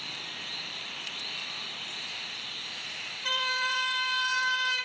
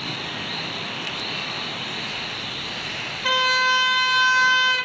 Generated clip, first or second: first